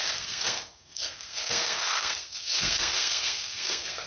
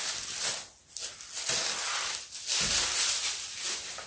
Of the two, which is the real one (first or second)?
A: second